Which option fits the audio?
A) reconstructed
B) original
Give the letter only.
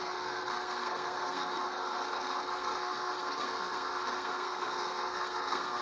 A